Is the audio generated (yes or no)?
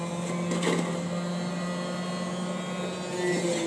no